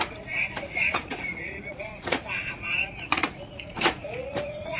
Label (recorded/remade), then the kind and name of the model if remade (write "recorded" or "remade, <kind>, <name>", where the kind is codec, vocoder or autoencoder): remade, vocoder, Vocos